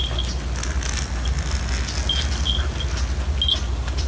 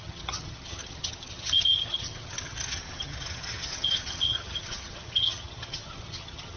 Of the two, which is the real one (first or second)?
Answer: first